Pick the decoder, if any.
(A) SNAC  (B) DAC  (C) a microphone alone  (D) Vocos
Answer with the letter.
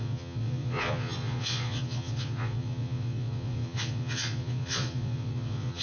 D